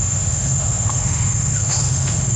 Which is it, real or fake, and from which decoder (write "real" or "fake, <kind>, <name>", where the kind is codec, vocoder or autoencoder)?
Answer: fake, autoencoder, DAC-VAE